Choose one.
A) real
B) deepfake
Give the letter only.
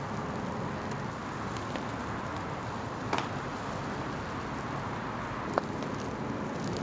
A